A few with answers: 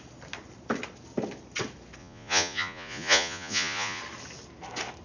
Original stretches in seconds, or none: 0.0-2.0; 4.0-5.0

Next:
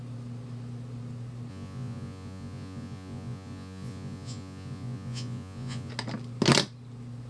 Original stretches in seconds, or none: 0.0-1.5; 5.9-7.3